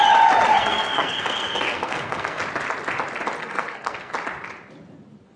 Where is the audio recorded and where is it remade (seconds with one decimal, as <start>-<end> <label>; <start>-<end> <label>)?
0.0-0.5 recorded; 0.5-2.4 remade; 2.4-3.4 recorded; 3.4-4.1 remade; 4.1-5.4 recorded